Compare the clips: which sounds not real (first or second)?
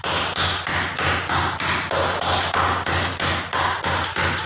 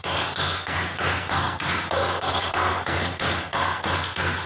second